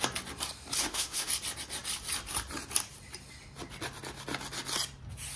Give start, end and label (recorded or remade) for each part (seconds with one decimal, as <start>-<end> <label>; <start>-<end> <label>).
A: 0.0-0.8 recorded; 0.8-1.3 remade; 1.3-5.4 recorded